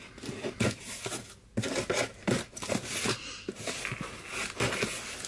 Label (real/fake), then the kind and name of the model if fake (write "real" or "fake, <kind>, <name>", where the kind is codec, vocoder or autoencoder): real